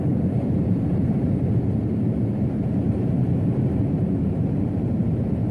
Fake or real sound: fake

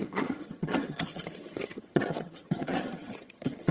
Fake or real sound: fake